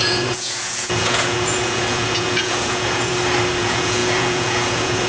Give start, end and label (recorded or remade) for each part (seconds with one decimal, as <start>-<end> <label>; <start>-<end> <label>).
0.0-3.1 remade; 3.1-3.6 recorded; 3.6-5.1 remade